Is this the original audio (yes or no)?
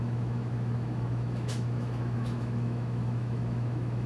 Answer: no